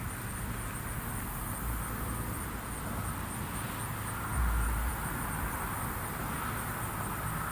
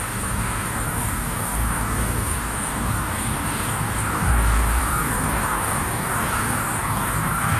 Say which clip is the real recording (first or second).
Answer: first